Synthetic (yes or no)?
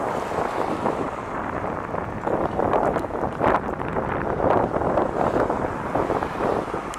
yes